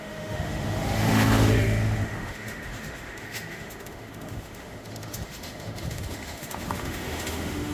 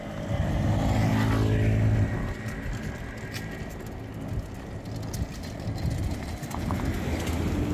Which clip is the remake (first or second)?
first